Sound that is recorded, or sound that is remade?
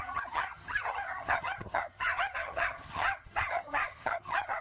remade